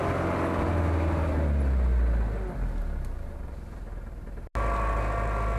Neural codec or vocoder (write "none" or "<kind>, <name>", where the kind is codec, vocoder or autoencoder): none